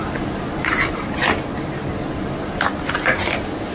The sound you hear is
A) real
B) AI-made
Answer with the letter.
A